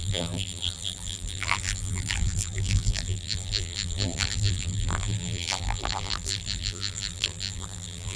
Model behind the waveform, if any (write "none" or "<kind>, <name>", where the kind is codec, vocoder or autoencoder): vocoder, BigVGAN v2